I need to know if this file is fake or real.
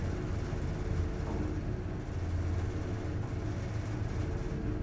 real